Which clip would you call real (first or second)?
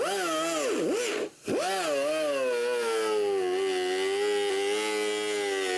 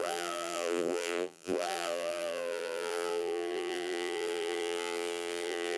first